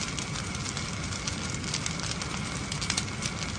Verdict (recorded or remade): recorded